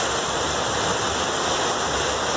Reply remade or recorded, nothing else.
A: recorded